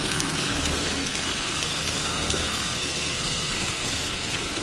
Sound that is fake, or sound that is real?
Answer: fake